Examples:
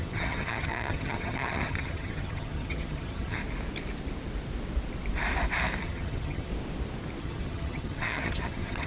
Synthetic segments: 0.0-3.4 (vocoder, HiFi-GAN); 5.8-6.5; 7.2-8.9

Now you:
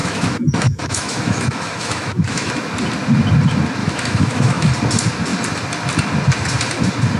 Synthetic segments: 0.0-2.5 (autoencoder, DAC-VAE); 3.8-4.7

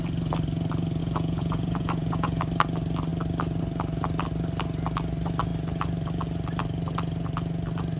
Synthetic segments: 1.0-2.4 (vocoder, Vocos)

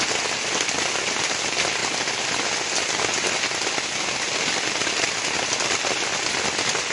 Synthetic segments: none

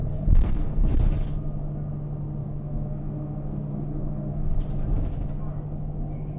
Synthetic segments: 0.0-0.9 (codec, SNAC); 2.4-4.5